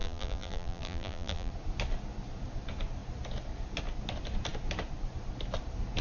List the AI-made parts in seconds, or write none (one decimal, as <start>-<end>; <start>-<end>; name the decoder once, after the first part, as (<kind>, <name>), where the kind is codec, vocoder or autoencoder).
0.0-1.5 (vocoder, BigVGAN v2)